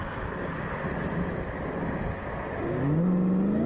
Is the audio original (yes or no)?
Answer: yes